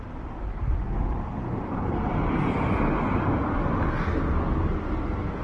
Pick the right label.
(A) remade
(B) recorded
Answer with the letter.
B